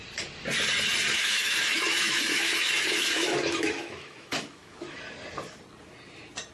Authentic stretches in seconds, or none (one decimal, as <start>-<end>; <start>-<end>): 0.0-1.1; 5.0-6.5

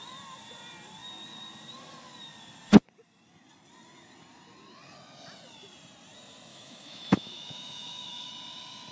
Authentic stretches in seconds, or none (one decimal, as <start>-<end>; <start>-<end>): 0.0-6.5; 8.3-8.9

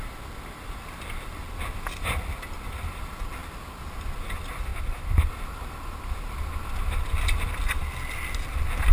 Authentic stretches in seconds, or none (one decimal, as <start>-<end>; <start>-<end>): 0.0-4.7; 5.3-8.9